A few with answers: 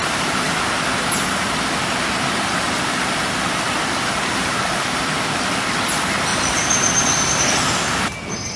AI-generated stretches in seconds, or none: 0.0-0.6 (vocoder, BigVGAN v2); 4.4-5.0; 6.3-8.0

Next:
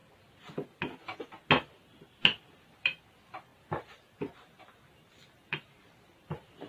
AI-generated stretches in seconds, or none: 2.6-6.7 (vocoder, BigVGAN v2)

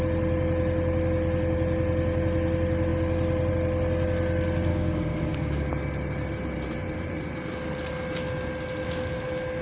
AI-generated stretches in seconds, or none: 4.7-5.7 (codec, DAC)

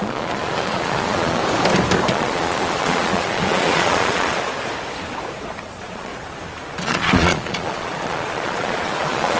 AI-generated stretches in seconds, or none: 0.0-1.4 (vocoder, Vocos); 2.1-4.5; 5.6-6.1; 6.8-9.4

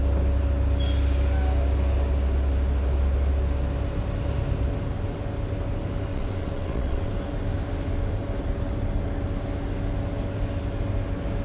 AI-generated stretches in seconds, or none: 6.1-7.1 (vocoder, WaveNeXt)

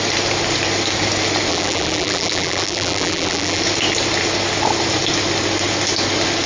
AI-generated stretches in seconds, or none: 1.5-3.6 (vocoder, BigVGAN v2)

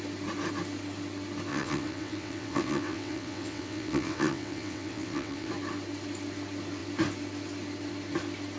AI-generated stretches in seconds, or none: 1.5-5.5 (vocoder, WaveNeXt)

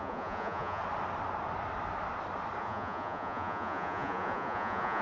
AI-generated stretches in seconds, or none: 0.0-0.8 (vocoder, Vocos); 2.6-5.0